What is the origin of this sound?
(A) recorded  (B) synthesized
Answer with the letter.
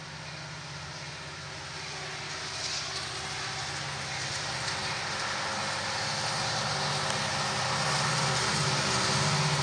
A